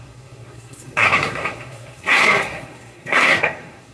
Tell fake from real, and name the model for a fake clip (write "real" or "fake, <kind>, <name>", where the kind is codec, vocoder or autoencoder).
fake, codec, SNAC